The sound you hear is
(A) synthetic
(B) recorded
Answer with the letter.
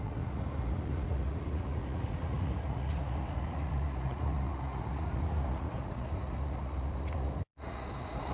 A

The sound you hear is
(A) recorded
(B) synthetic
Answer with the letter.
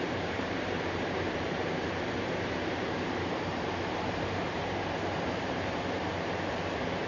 B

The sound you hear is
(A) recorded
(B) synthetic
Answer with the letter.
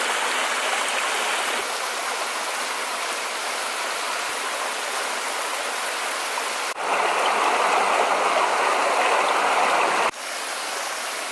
A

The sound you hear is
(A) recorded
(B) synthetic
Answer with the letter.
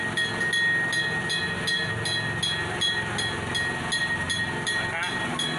A